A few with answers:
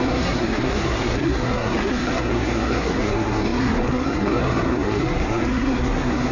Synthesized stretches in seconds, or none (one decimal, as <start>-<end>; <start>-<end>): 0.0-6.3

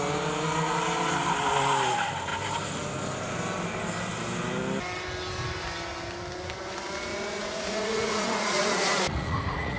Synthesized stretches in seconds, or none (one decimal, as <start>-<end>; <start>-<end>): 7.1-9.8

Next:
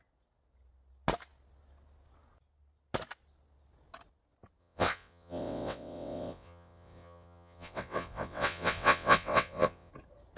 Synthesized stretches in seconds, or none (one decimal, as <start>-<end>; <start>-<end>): 4.6-9.9

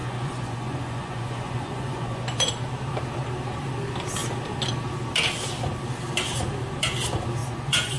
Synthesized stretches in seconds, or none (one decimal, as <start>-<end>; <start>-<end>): 0.0-2.5; 7.4-8.0

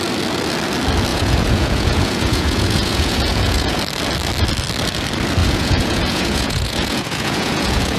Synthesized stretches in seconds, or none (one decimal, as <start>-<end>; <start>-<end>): 1.1-3.8; 5.4-8.0